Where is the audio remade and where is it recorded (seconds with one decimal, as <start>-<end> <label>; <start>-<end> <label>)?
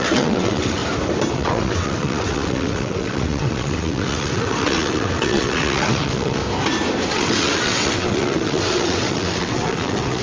0.0-0.8 remade; 0.8-1.3 recorded; 1.3-6.4 remade; 6.4-7.1 recorded; 7.1-10.2 remade